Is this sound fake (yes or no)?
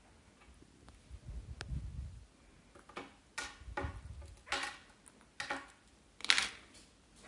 no